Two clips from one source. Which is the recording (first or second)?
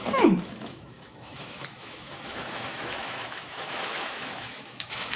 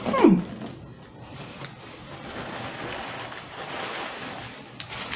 second